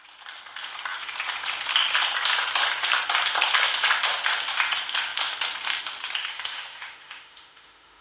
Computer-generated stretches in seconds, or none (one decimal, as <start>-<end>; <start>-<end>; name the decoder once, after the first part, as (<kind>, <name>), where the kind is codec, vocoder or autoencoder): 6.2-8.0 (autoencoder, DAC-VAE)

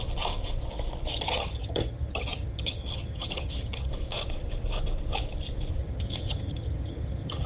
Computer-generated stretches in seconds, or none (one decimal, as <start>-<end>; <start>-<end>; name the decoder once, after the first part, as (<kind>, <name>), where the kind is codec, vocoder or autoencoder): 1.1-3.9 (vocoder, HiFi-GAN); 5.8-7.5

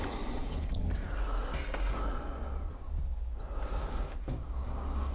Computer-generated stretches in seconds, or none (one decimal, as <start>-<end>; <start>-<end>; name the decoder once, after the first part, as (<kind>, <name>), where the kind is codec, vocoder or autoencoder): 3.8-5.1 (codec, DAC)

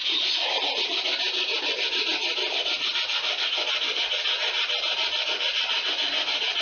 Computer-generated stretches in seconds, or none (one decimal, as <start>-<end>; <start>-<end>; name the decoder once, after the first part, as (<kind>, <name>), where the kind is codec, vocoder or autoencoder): none